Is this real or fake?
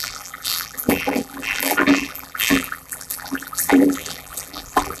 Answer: fake